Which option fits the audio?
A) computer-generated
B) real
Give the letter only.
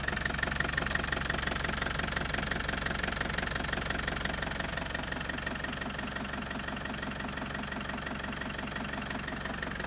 B